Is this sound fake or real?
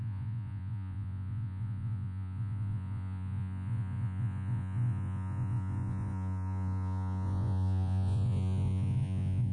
fake